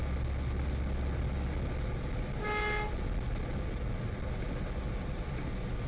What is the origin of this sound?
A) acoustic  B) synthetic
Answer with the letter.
A